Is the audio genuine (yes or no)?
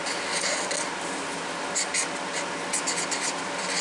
yes